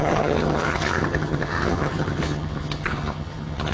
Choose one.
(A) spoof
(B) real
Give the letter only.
A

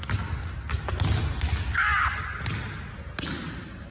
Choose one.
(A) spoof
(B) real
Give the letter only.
B